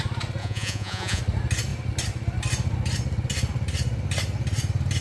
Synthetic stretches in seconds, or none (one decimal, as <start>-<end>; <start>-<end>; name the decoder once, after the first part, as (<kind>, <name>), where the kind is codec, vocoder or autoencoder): 0.4-1.2 (vocoder, Vocos)